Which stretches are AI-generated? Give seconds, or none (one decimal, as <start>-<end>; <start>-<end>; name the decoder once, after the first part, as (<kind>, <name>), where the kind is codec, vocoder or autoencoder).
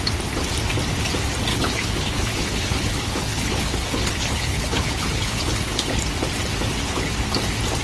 1.5-6.0 (codec, HILCodec)